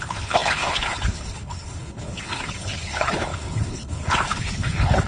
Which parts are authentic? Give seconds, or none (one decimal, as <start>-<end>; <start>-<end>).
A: none